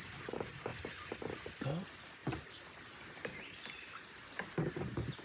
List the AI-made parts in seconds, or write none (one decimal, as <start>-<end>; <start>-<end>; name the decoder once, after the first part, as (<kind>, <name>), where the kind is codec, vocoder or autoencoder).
none